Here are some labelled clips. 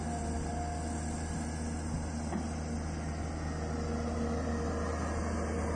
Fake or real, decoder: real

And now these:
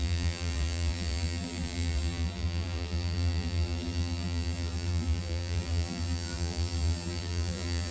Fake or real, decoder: fake, vocoder, BigVGAN v2